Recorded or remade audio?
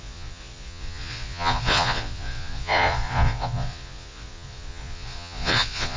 remade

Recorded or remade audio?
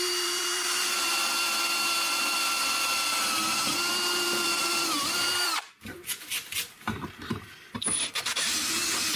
remade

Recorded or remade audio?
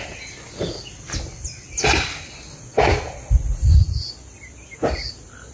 recorded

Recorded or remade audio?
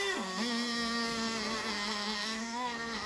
remade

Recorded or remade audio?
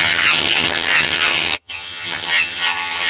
remade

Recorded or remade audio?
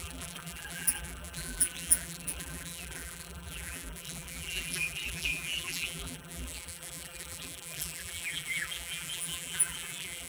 remade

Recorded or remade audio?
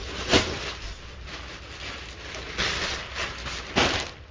recorded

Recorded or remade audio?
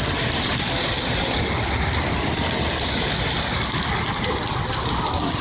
recorded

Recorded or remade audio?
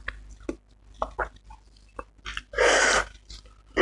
recorded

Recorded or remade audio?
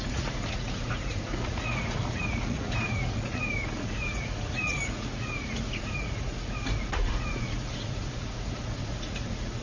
remade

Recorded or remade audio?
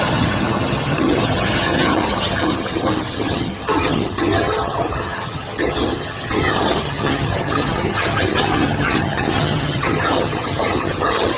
remade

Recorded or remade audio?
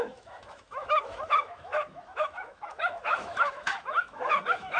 remade